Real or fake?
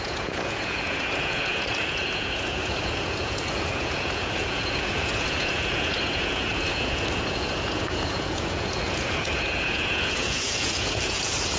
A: fake